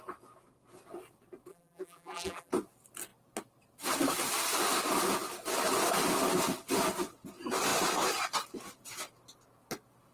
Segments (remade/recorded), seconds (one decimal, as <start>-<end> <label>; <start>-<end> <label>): 0.0-1.5 recorded; 1.5-2.5 remade; 2.5-10.1 recorded